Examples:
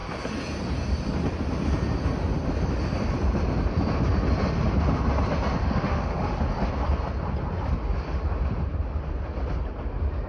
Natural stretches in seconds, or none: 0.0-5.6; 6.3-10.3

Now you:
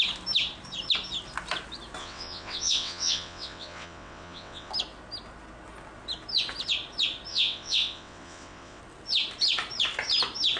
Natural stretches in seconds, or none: 0.0-2.0; 4.7-7.3; 8.8-10.6

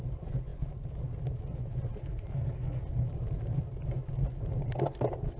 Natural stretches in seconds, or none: 0.0-2.0; 2.8-5.4

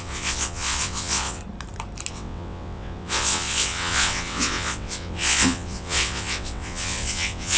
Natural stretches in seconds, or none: 1.4-2.1

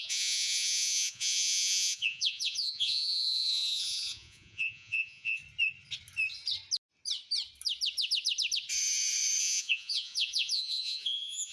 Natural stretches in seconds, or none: 5.4-9.4

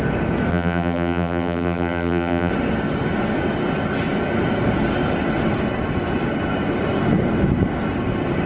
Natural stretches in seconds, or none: 0.0-0.5; 2.5-8.5

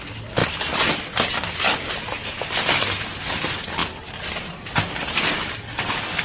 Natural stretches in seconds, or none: 0.0-6.2

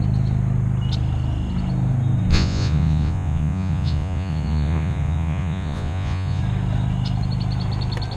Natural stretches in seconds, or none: 0.0-2.3; 6.4-8.2